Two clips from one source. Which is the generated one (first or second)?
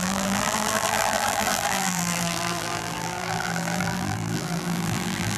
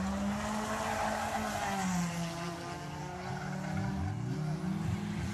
first